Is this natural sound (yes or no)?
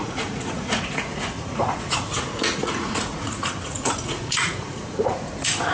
no